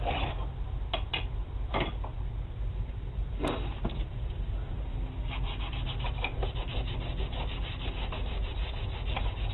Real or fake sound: real